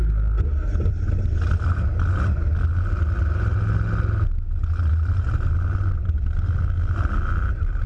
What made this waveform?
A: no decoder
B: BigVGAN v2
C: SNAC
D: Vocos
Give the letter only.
A